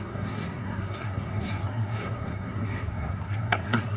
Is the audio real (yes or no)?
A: no